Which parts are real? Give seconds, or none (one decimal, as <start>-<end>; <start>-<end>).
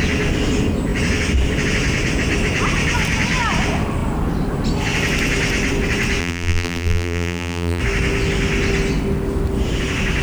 0.0-6.2; 7.8-10.2